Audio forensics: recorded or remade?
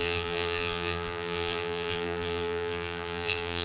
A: remade